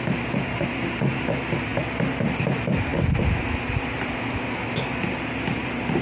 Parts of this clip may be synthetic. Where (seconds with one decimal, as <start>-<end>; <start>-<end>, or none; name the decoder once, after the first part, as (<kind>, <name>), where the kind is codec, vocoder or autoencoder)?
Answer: none